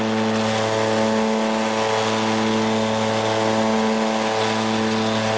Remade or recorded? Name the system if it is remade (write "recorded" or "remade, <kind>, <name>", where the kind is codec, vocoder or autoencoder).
recorded